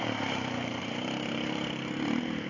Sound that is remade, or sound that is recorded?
remade